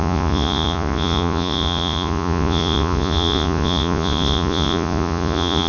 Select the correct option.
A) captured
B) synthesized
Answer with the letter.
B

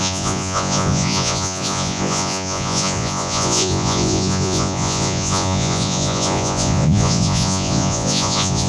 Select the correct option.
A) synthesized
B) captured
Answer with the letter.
A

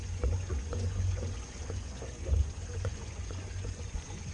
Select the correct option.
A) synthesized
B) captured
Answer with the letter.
A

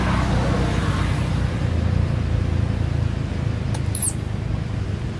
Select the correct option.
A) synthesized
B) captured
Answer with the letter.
B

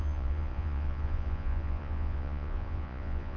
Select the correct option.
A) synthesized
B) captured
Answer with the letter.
A